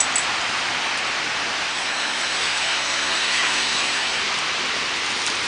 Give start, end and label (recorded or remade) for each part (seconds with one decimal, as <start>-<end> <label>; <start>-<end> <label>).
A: 0.0-1.7 recorded; 1.7-4.2 remade; 4.2-5.5 recorded